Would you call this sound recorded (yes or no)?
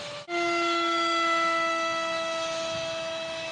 no